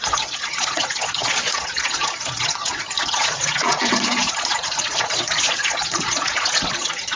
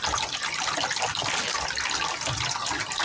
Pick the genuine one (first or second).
second